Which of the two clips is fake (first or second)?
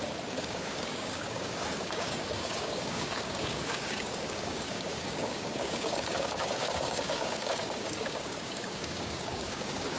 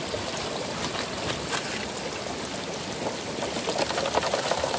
first